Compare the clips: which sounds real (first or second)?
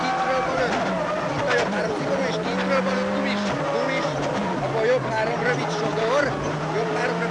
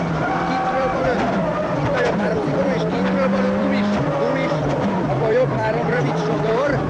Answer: first